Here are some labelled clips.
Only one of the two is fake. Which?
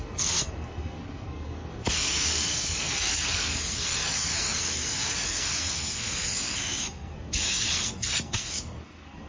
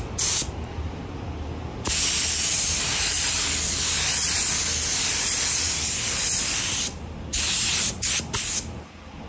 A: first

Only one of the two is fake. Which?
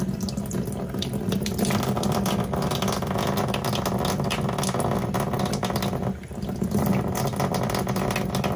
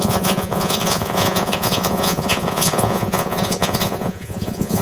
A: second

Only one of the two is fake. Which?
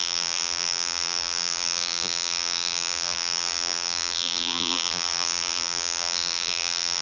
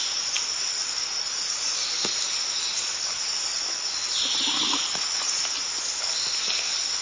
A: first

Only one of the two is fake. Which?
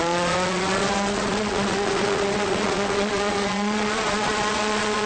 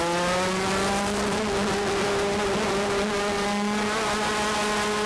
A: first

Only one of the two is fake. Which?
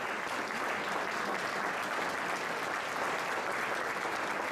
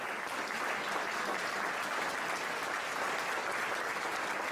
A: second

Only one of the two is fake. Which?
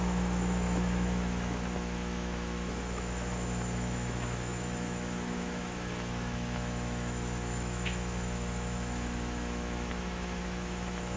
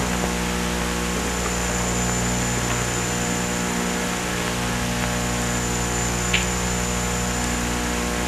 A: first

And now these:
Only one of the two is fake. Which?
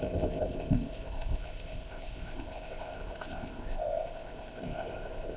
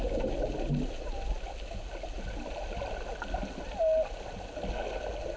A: first